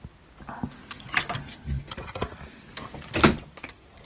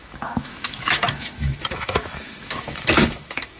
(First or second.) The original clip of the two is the first